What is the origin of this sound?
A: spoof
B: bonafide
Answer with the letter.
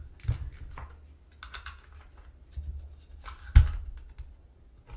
B